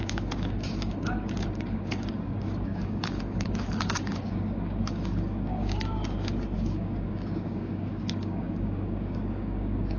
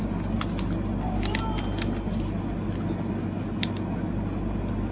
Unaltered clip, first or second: second